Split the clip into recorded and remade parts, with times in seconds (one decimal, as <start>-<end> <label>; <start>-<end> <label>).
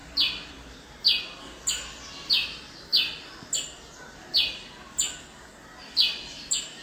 0.0-6.8 recorded